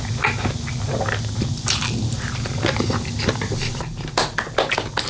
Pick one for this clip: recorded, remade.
recorded